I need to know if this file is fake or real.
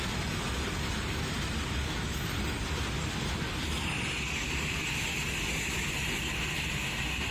real